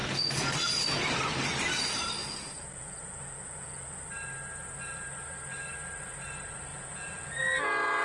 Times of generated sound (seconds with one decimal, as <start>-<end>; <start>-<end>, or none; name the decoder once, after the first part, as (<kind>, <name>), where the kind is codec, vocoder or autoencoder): 2.2-4.0 (vocoder, Vocos); 6.7-7.3